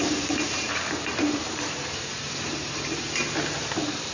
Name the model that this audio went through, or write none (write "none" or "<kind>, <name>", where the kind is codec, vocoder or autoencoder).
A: vocoder, BigVGAN v2